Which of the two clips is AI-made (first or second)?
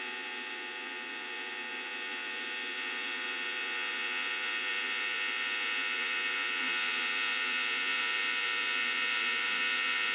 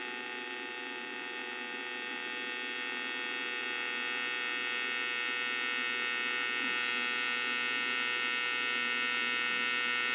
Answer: first